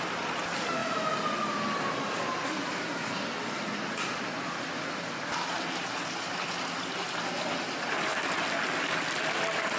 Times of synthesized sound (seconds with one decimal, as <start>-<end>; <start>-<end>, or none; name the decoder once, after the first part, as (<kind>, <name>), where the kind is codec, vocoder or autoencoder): none